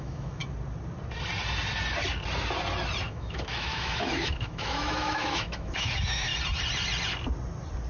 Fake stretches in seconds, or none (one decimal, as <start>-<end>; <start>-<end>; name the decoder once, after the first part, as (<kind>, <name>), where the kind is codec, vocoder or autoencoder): 0.0-0.4 (autoencoder, DAC-VAE); 3.0-6.3